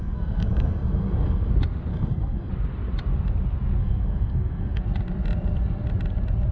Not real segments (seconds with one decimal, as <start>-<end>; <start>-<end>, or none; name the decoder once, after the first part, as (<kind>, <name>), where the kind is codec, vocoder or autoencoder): 0.0-1.5 (codec, SNAC); 1.9-2.5; 3.8-4.8